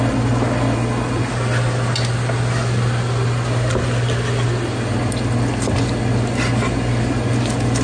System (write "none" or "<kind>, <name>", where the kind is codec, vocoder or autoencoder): none